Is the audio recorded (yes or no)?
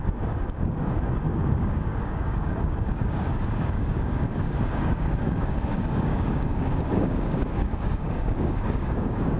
no